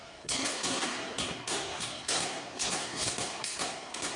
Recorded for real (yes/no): no